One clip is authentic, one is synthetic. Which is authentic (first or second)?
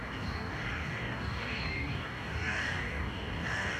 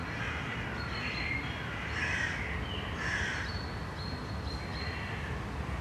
second